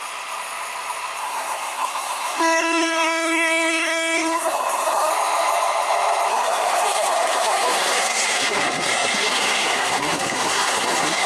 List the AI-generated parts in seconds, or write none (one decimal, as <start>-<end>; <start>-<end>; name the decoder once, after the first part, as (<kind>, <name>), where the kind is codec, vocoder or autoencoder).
1.2-5.1 (codec, SNAC); 6.3-11.3

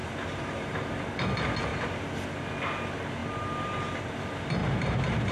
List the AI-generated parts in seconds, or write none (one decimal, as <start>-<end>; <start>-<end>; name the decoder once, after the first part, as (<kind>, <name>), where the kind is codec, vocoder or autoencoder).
0.0-1.1 (vocoder, BigVGAN v2); 4.6-5.3

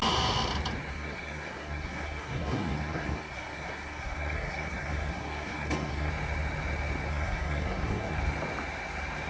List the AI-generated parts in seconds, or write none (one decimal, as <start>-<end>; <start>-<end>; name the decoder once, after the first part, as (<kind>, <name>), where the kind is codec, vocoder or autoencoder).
0.9-6.1 (codec, SNAC); 7.1-8.2

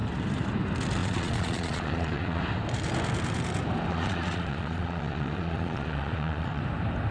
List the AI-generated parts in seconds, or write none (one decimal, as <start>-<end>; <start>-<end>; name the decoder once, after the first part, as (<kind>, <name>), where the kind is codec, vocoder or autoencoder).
1.0-2.4 (vocoder, Vocos); 3.9-6.6

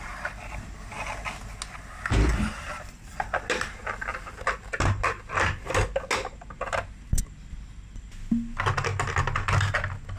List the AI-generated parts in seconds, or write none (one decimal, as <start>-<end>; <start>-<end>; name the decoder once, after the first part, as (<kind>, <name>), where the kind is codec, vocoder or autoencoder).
none

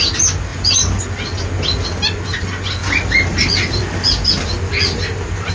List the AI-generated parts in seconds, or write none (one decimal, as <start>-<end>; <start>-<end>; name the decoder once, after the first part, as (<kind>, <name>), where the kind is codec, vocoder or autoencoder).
0.5-1.0 (vocoder, BigVGAN v2); 2.8-5.5

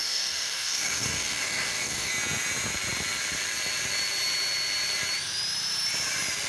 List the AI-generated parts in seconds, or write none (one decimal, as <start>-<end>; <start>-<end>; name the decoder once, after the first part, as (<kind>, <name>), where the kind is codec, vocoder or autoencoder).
0.0-2.1 (codec, DAC)

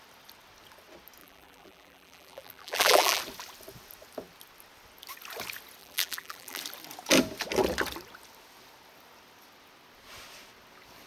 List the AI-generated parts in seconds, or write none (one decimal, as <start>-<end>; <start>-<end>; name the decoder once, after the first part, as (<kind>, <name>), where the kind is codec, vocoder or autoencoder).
1.2-3.2 (vocoder, BigVGAN v2); 5.8-6.6